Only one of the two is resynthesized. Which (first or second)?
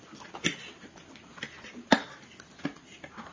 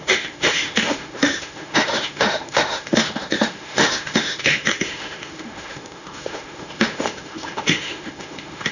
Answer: second